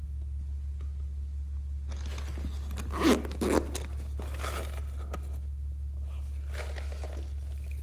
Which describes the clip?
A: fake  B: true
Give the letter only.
B